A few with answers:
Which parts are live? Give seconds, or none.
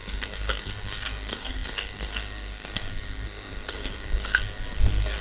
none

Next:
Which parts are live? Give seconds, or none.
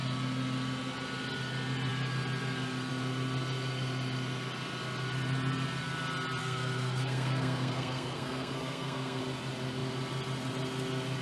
0.0-6.4; 9.2-11.2